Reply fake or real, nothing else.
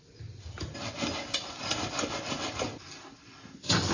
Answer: real